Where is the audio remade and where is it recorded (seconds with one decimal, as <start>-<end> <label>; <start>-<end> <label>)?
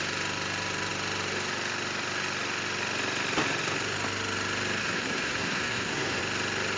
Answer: 0.0-4.8 recorded; 4.8-6.2 remade; 6.2-6.8 recorded